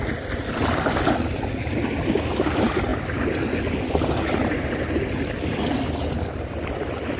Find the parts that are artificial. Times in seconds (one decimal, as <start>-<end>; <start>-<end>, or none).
none